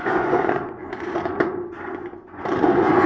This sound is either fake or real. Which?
fake